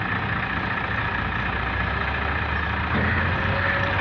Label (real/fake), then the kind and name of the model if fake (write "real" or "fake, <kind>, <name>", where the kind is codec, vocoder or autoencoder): real